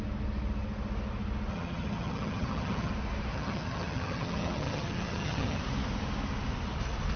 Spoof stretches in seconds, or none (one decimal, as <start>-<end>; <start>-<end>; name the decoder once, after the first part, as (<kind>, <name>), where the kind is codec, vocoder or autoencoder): 1.5-2.9 (vocoder, HiFi-GAN); 3.3-5.6

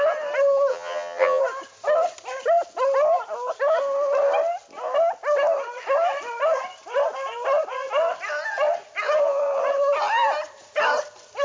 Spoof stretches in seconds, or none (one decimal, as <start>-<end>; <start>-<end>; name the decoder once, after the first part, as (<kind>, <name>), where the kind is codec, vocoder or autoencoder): 0.7-1.4 (vocoder, HiFi-GAN)

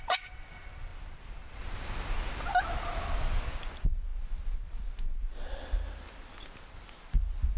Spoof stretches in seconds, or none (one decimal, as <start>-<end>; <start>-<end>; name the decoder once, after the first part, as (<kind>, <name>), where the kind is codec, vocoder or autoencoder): none

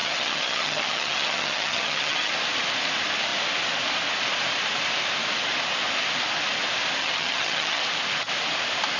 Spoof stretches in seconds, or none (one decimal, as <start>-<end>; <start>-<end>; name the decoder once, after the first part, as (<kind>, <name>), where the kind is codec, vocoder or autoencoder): 0.0-2.3 (vocoder, HiFi-GAN); 7.0-7.8

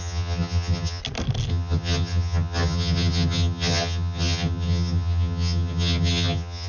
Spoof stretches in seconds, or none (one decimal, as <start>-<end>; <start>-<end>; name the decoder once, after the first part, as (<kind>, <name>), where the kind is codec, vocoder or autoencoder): 0.0-1.0 (vocoder, HiFi-GAN); 1.5-6.7

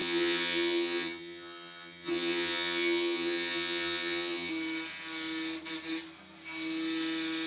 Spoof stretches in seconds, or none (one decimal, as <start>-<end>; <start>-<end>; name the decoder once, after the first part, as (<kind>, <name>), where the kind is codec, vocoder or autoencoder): 0.0-4.5 (vocoder, HiFi-GAN)

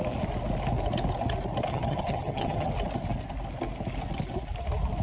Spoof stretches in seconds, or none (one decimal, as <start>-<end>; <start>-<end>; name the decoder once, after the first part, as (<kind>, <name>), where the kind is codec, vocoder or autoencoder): 1.7-2.7 (vocoder, HiFi-GAN)